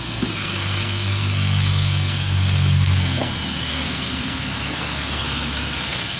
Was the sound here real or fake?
fake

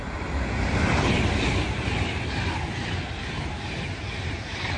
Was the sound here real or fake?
real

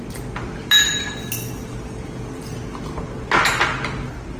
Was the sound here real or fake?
real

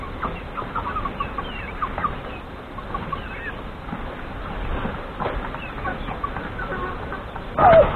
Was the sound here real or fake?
real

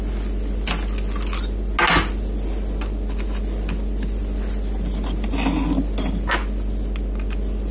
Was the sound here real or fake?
real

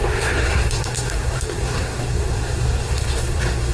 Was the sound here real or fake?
fake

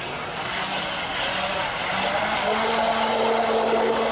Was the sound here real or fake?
real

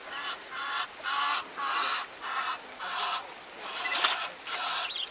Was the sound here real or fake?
real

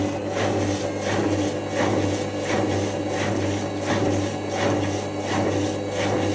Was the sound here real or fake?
real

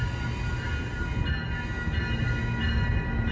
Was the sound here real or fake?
real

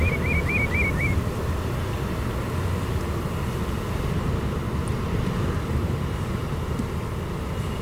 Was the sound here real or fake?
real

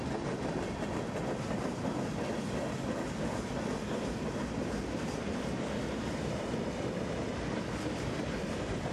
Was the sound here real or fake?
real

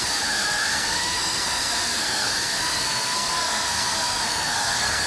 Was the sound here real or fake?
fake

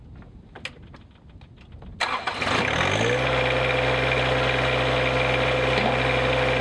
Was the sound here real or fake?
real